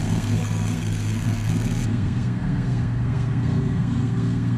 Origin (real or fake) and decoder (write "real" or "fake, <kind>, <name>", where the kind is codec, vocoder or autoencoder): fake, codec, SNAC